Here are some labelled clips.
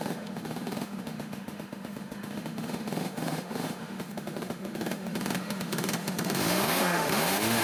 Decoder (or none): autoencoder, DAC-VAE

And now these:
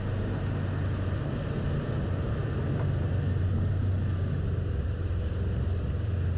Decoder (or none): none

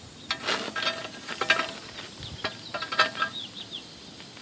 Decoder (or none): none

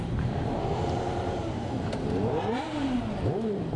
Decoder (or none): vocoder, BigVGAN v2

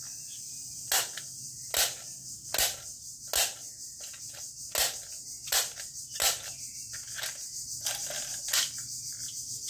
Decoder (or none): none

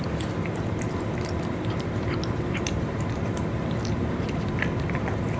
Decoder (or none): vocoder, BigVGAN v2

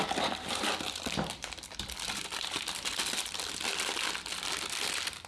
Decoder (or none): vocoder, BigVGAN v2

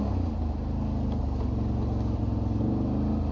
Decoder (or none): none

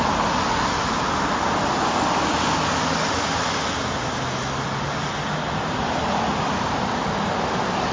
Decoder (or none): none